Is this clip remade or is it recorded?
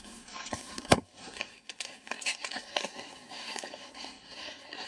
remade